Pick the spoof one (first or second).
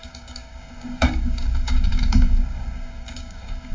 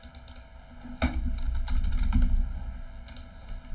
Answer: first